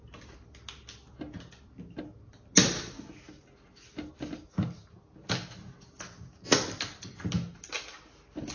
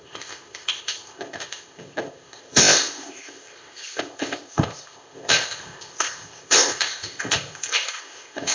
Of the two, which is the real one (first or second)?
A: first